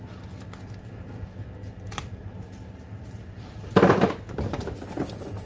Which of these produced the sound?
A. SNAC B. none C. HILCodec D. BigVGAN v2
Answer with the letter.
D